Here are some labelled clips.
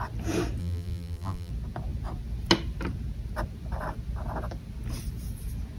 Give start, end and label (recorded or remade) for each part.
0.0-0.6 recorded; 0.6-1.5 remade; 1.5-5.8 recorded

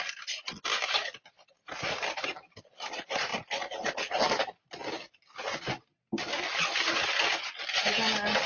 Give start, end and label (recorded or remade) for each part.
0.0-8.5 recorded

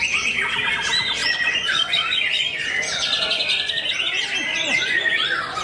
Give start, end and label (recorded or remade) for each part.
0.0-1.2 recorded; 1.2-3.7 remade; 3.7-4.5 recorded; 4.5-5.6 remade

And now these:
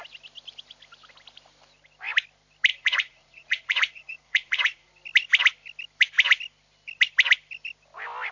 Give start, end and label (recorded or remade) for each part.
0.0-2.7 recorded; 2.7-4.9 remade; 4.9-8.3 recorded